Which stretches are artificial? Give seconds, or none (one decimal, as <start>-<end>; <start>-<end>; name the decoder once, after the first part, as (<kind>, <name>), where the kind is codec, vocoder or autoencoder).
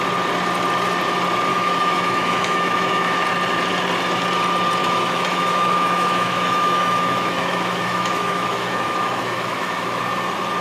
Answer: 1.5-3.2 (autoencoder, DAC-VAE); 4.8-10.0